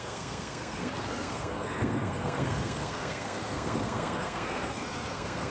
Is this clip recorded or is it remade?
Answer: remade